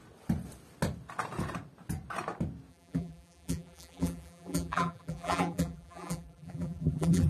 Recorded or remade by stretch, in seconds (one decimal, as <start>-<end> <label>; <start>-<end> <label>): 0.0-2.7 recorded; 2.7-7.3 remade